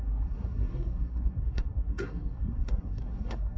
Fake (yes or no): yes